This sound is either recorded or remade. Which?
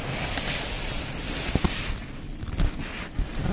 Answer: recorded